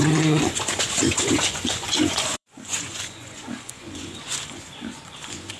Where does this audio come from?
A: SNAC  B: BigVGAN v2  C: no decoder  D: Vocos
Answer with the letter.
D